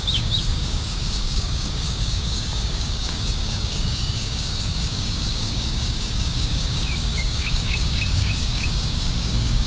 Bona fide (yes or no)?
no